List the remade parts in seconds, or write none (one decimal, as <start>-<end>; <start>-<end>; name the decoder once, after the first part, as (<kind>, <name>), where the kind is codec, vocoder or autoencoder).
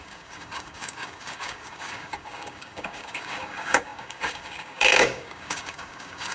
0.0-6.3 (codec, DAC)